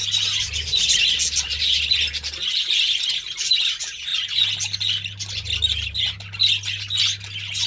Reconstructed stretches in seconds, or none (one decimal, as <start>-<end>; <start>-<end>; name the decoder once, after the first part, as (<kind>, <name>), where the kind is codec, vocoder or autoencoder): none